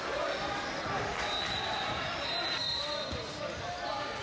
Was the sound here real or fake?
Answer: real